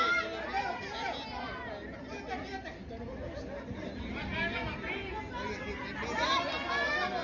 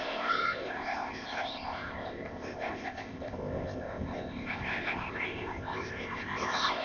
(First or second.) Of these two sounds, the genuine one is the first